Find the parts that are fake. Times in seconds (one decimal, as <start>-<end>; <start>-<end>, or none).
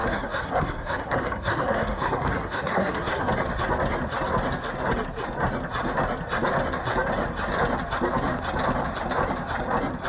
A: 0.0-3.3